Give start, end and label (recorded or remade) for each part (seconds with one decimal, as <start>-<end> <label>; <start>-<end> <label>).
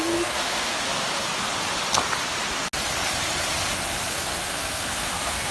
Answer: 0.0-0.7 remade; 0.7-4.0 recorded; 4.0-5.5 remade